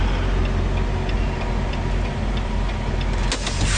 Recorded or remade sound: recorded